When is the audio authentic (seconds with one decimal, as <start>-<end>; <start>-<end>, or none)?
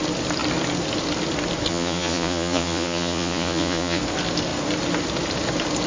0.0-1.7; 4.0-5.9